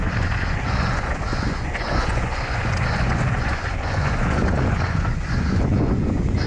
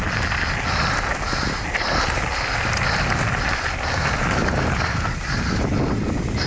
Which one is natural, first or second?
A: second